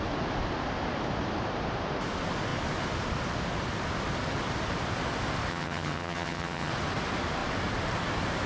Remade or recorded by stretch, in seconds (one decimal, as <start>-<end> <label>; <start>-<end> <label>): 0.0-5.5 recorded; 5.5-6.7 remade; 6.7-8.5 recorded